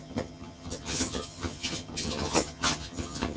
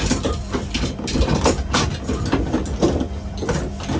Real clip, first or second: second